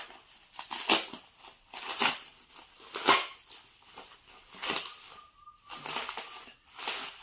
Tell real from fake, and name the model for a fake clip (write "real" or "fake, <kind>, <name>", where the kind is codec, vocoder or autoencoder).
real